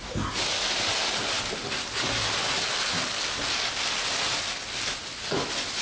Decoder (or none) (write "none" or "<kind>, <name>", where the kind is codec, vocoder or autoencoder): none